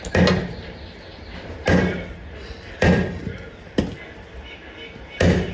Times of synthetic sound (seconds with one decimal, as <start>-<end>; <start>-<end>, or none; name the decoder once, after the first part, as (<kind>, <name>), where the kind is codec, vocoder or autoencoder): 2.4-4.0 (vocoder, BigVGAN v2)